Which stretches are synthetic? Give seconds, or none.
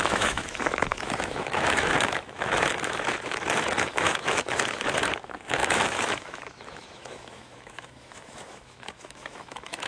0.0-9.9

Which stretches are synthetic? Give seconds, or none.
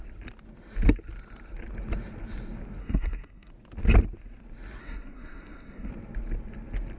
2.8-3.5; 4.8-5.9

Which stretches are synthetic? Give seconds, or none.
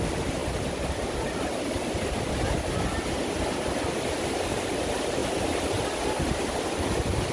5.2-6.6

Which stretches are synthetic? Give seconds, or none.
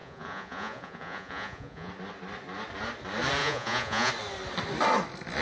0.0-1.9; 3.4-4.1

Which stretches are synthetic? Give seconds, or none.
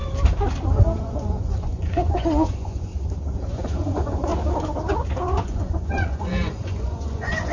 1.0-2.9; 3.5-4.3; 5.4-7.5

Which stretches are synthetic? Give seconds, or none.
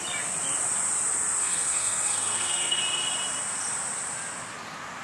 1.4-2.8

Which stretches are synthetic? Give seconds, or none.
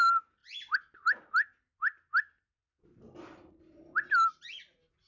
none